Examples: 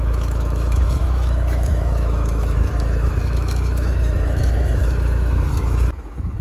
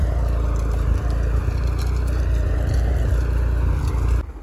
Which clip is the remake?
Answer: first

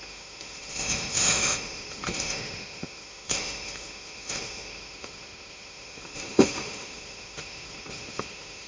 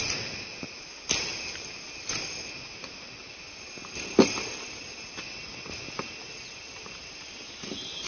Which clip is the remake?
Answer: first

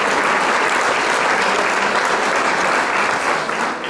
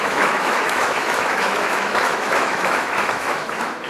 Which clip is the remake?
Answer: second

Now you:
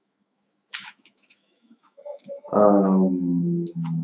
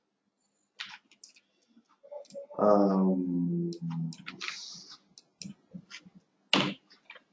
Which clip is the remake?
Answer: first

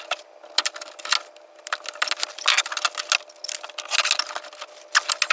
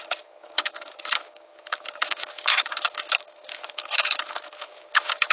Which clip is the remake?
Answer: second